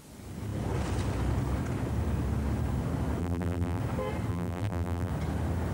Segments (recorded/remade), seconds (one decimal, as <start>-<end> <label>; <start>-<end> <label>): 0.0-3.2 recorded; 3.2-3.8 remade; 3.8-4.3 recorded; 4.3-5.1 remade; 5.1-5.7 recorded